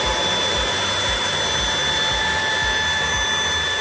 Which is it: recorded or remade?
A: recorded